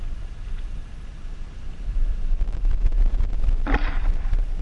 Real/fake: fake